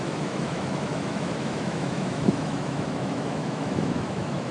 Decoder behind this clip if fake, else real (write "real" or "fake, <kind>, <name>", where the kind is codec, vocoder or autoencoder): fake, autoencoder, DAC-VAE